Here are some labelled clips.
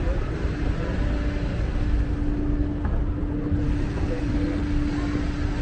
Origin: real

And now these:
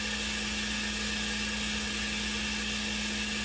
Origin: real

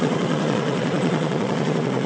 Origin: fake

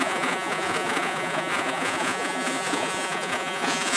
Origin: fake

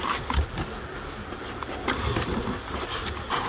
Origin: real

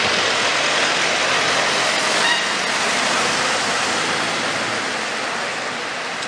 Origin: real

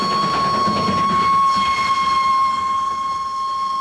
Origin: real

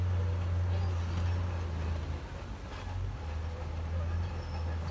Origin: real